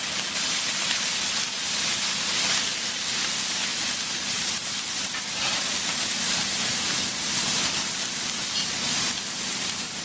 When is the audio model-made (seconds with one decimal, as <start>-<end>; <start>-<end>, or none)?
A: 3.7-6.6